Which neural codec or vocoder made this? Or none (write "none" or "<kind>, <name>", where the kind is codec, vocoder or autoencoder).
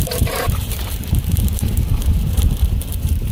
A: vocoder, BigVGAN v2